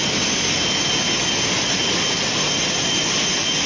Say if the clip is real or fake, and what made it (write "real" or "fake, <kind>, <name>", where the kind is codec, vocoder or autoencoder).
real